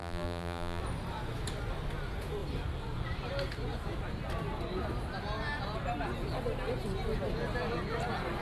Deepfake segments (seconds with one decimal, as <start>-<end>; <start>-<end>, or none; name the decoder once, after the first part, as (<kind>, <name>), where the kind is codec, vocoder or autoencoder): 0.0-0.8 (vocoder, BigVGAN v2)